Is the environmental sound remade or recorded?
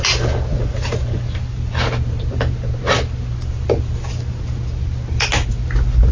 recorded